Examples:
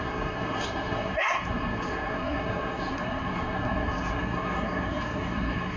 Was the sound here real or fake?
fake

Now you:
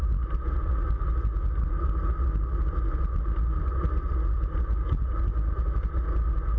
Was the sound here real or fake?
real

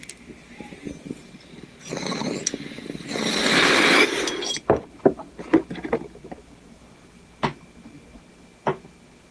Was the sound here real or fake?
real